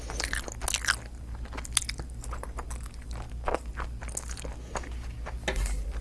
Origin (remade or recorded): recorded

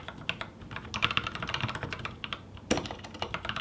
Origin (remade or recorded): recorded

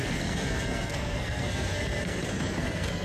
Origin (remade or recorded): remade